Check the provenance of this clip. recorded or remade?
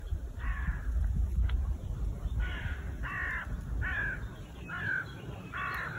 recorded